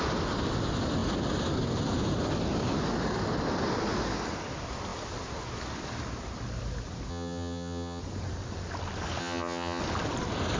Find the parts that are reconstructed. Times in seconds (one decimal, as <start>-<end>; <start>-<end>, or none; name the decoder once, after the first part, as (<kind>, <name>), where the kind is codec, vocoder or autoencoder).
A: 7.1-8.0 (vocoder, HiFi-GAN); 9.2-9.8